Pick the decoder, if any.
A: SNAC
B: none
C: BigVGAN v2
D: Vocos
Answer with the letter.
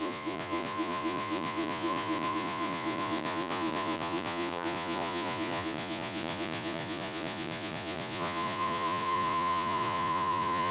D